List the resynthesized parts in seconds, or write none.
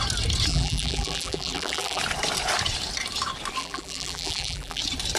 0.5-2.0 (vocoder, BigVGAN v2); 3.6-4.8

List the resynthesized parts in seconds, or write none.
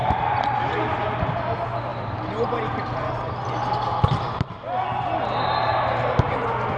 0.0-0.6 (vocoder, BigVGAN v2); 1.9-3.3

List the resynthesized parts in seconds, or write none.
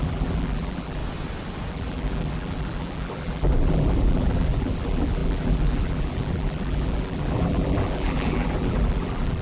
0.0-1.0 (vocoder, BigVGAN v2); 1.7-9.4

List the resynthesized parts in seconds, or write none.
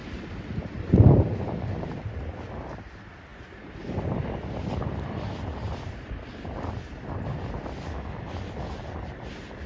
0.0-2.0 (vocoder, BigVGAN v2)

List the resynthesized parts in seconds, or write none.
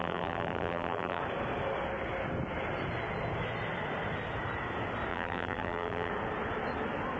0.0-1.2 (vocoder, BigVGAN v2); 5.1-6.1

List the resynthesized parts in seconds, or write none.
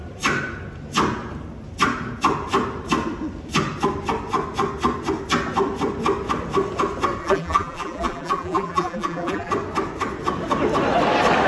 7.2-9.5 (vocoder, BigVGAN v2)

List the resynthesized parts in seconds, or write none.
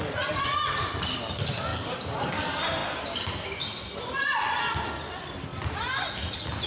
5.5-6.1 (vocoder, BigVGAN v2)